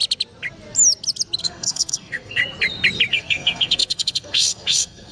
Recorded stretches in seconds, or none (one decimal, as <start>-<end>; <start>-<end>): 0.0-1.4; 2.4-3.1